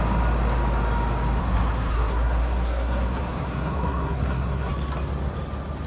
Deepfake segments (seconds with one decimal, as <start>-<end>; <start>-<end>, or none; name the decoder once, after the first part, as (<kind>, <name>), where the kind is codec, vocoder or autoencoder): 1.4-4.7 (codec, SNAC)